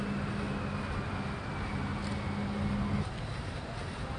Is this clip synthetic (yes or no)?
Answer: no